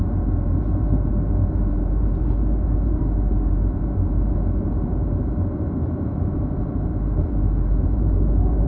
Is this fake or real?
fake